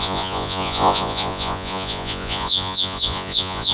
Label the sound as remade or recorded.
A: remade